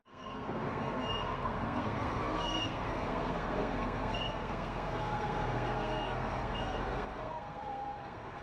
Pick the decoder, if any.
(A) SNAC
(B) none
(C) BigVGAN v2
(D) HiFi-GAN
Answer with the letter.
A